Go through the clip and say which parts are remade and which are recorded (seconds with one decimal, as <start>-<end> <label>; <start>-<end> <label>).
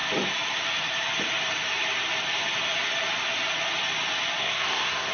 0.0-4.4 recorded; 4.4-5.1 remade